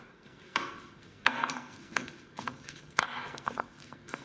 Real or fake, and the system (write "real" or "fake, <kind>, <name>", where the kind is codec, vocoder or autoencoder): fake, codec, SNAC